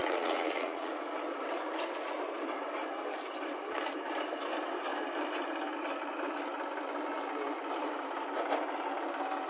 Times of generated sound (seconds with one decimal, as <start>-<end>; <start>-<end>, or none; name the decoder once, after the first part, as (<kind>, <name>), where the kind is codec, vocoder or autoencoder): 0.0-0.9 (vocoder, Vocos)